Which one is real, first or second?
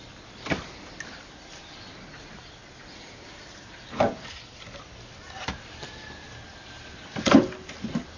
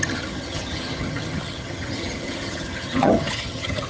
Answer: first